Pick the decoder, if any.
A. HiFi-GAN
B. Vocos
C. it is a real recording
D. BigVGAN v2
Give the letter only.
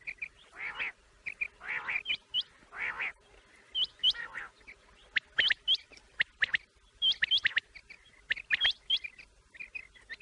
C